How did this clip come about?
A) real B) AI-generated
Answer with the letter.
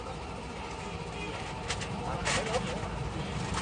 A